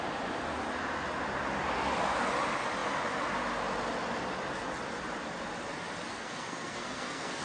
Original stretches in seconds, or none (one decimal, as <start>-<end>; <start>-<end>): 0.0-6.1